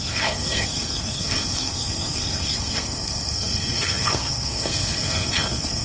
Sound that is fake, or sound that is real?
fake